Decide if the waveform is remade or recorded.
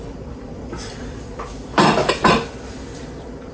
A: remade